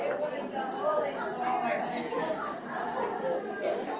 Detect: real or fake real